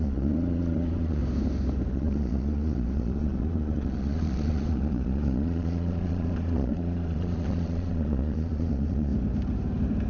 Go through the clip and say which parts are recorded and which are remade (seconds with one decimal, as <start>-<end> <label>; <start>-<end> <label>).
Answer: 0.0-1.2 remade; 1.2-1.9 recorded; 1.9-9.1 remade; 9.1-10.1 recorded